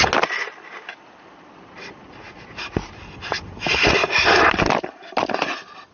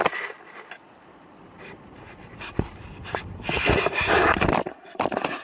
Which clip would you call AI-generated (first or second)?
second